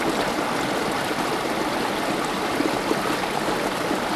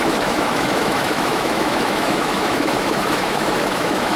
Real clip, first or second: first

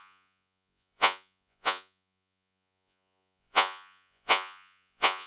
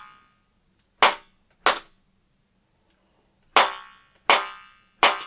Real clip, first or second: second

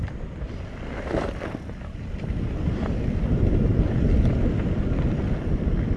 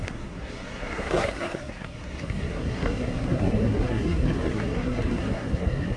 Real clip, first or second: first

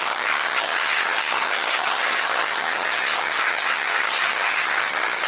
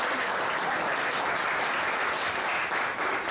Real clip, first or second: second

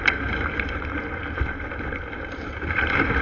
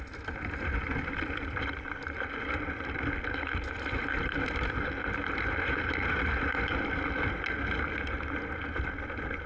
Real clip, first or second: second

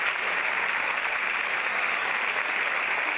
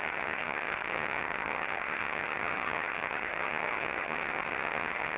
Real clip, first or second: first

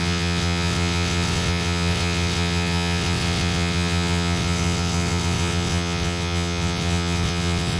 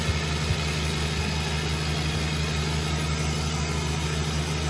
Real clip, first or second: second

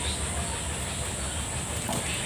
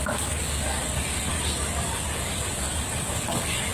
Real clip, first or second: first